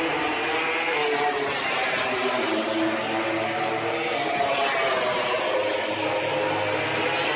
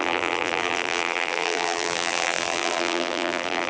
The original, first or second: first